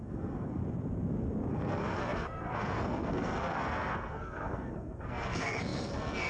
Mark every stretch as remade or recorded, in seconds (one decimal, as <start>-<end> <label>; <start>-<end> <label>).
0.0-0.6 remade; 0.6-1.5 recorded; 1.5-6.3 remade